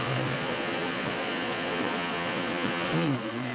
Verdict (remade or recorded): remade